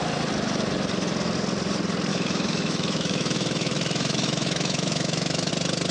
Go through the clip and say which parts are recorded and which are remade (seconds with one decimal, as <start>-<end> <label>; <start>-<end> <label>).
0.0-2.1 recorded; 2.1-5.5 remade; 5.5-5.9 recorded

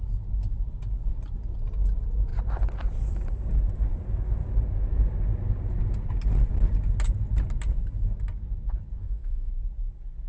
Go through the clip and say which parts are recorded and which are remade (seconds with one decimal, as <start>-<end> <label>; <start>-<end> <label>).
0.0-9.0 recorded; 9.0-9.5 remade; 9.5-10.3 recorded

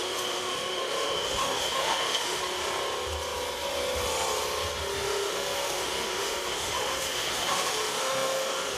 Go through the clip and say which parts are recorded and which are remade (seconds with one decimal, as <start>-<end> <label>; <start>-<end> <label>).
0.0-2.4 remade; 2.4-4.9 recorded; 4.9-8.8 remade